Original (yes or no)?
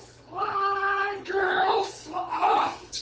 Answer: no